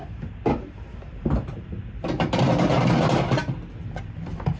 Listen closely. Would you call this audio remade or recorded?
recorded